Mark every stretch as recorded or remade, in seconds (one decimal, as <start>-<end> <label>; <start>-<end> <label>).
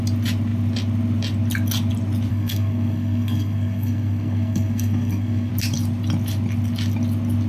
0.0-2.3 recorded; 2.3-5.5 remade; 5.5-7.5 recorded